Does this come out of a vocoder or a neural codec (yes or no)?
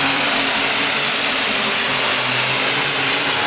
yes